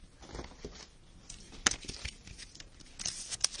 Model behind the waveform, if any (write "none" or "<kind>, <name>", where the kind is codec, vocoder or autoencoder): none